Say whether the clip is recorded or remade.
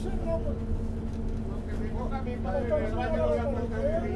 recorded